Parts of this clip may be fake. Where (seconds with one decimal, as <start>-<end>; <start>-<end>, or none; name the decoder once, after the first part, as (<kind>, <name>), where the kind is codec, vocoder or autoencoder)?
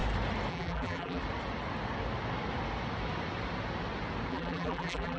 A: 0.5-1.2 (vocoder, BigVGAN v2); 4.3-5.2